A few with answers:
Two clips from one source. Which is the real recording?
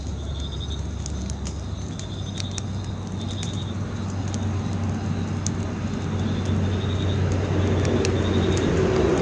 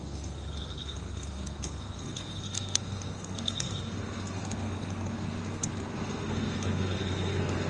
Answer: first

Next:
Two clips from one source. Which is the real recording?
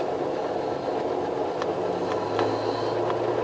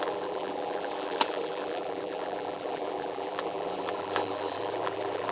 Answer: first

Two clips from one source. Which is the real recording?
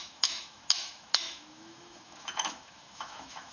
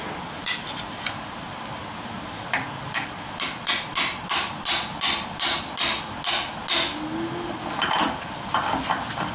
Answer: second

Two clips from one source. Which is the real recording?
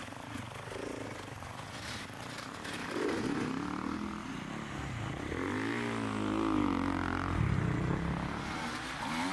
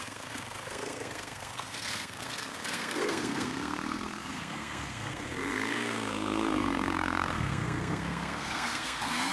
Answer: first